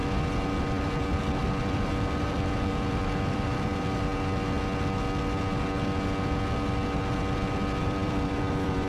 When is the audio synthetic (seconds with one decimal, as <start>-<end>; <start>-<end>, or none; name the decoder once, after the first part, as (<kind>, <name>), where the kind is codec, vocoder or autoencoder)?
0.6-4.1 (vocoder, BigVGAN v2); 7.8-8.9